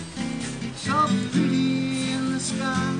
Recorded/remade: recorded